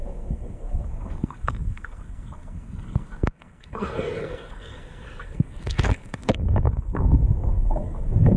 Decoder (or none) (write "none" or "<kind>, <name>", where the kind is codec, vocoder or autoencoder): codec, SNAC